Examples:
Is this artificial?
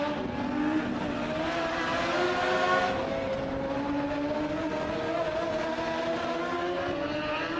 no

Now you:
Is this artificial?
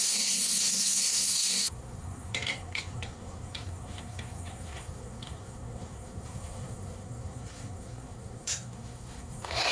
yes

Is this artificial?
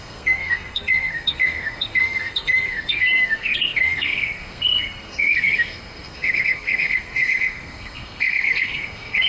yes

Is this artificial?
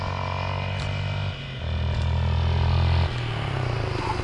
no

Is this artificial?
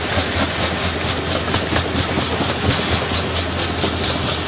no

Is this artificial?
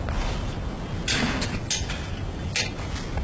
no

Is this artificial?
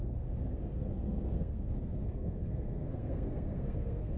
yes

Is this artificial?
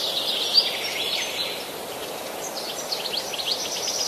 no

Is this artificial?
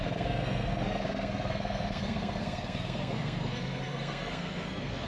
yes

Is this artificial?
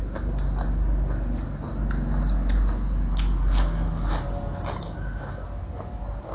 no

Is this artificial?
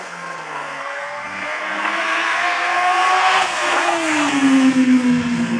yes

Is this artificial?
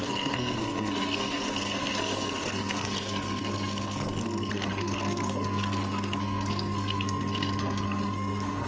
yes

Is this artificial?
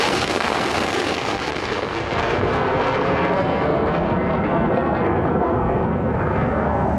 yes